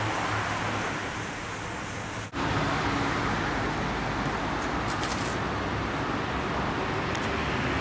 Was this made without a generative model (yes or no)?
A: yes